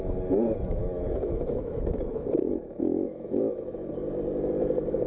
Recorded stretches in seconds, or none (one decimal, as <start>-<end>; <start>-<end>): 0.0-0.8; 3.9-5.1